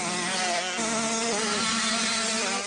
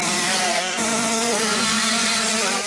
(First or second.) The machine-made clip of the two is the second